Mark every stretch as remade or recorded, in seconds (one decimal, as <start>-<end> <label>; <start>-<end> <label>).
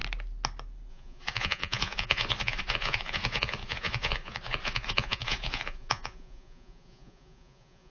0.0-0.9 recorded; 0.9-7.9 remade